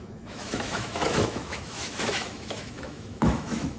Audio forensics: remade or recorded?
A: remade